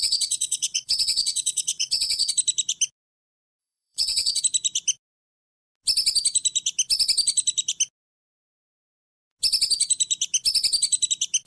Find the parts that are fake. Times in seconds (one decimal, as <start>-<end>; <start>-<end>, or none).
0.0-2.3; 3.6-4.4